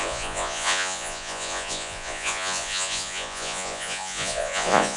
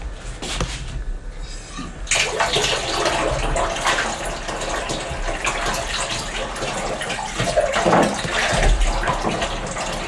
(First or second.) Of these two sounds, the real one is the second